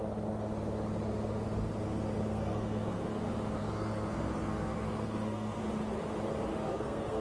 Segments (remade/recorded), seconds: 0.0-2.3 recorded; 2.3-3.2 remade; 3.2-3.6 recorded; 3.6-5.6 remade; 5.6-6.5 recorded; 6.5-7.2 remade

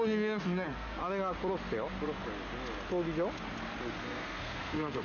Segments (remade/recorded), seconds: 0.0-1.0 remade; 1.0-4.0 recorded; 4.0-5.0 remade

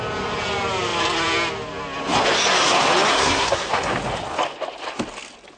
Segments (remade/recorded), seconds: 0.0-3.1 recorded; 3.1-3.9 remade; 3.9-5.6 recorded

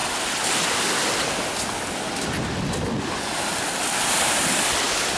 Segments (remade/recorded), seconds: 0.0-5.2 recorded

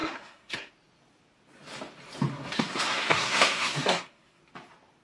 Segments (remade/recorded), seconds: 0.0-0.7 remade; 0.7-2.3 recorded; 2.3-4.4 remade; 4.4-5.0 recorded